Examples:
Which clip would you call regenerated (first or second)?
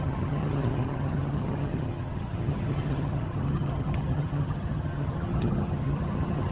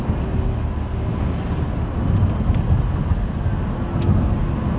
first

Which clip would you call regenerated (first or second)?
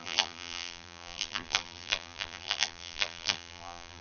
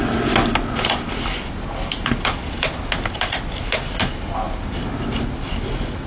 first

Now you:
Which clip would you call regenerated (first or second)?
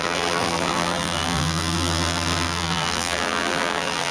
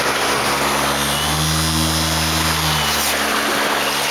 first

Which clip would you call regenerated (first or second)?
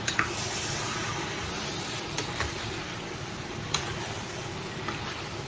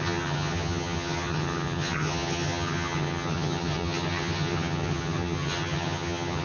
second